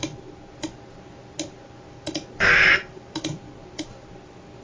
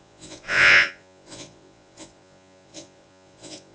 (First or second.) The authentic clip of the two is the first